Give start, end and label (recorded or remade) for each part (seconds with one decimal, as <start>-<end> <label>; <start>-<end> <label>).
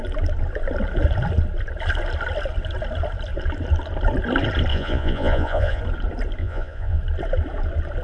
0.0-4.7 recorded; 4.7-5.8 remade; 5.8-6.4 recorded; 6.4-7.0 remade; 7.0-8.0 recorded